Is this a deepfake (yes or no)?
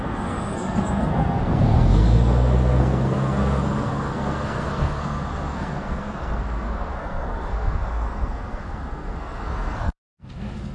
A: yes